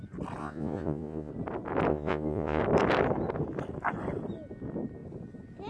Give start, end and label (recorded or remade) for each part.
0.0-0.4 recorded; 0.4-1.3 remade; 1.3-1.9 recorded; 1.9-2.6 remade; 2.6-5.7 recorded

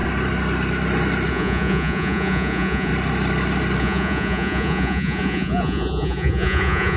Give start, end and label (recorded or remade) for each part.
0.0-1.3 recorded; 1.3-2.9 remade; 2.9-3.8 recorded; 3.8-7.0 remade

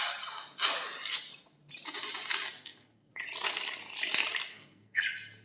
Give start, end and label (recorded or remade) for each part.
0.0-2.6 recorded; 2.6-3.1 remade; 3.1-4.5 recorded; 4.5-5.0 remade; 5.0-5.4 recorded

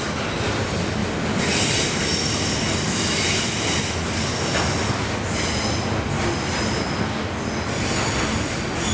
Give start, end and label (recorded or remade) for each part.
0.0-8.9 recorded

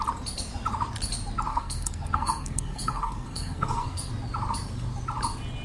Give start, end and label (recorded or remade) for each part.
0.0-1.5 recorded; 1.5-4.1 remade; 4.1-5.6 recorded

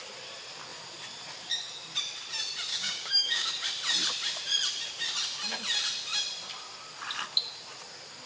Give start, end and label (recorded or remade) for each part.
0.0-2.7 recorded; 2.7-3.5 remade; 3.5-8.3 recorded